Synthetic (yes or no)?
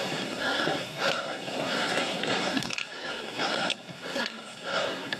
yes